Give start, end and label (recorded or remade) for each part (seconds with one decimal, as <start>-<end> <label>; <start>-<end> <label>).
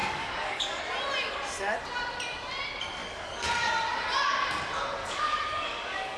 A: 0.0-0.8 remade; 0.8-3.0 recorded; 3.0-3.5 remade; 3.5-5.0 recorded; 5.0-6.2 remade